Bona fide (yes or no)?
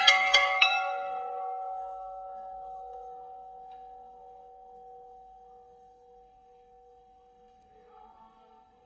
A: no